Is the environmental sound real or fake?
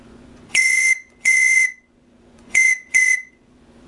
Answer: fake